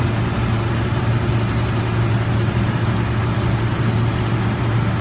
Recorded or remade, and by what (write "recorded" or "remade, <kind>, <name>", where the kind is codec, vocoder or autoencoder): recorded